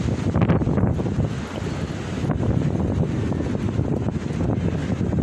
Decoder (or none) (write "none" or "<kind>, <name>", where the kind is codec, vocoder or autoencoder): none